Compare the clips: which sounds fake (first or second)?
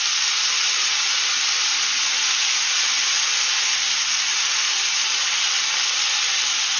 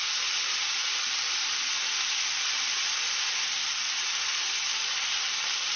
second